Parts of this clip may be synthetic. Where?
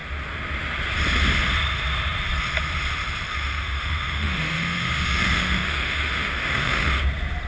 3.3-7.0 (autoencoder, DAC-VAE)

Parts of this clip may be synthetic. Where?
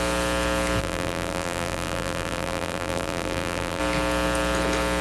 0.8-3.8 (vocoder, BigVGAN v2)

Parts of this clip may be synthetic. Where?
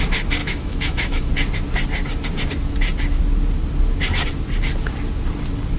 0.4-1.3 (autoencoder, DAC-VAE)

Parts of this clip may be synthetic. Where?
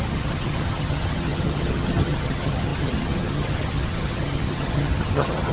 0.0-5.5 (vocoder, HiFi-GAN)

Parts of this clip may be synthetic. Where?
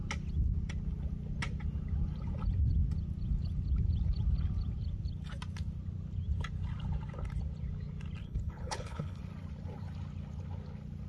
8.2-9.2 (codec, HILCodec)